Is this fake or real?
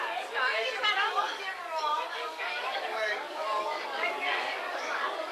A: fake